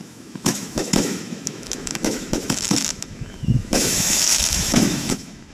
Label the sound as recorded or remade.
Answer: remade